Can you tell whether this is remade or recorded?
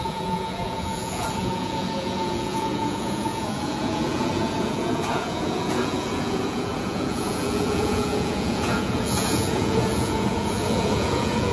remade